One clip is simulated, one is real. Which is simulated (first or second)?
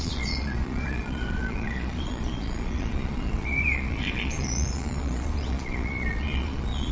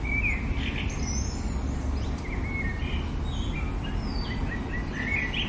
first